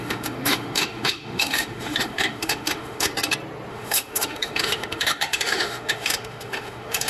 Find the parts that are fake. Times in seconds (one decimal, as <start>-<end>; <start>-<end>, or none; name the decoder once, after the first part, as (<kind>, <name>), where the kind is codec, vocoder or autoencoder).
0.0-3.1 (autoencoder, DAC-VAE); 3.7-7.1